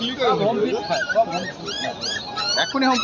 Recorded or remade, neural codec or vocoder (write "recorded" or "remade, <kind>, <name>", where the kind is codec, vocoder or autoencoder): recorded